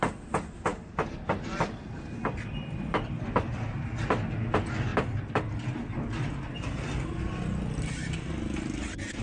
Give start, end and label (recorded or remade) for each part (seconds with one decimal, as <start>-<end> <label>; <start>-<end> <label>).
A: 0.0-9.2 recorded